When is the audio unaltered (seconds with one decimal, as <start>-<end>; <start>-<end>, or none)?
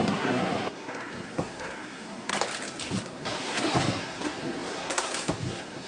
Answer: 2.3-3.0